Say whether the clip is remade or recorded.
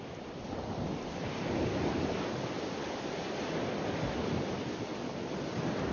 recorded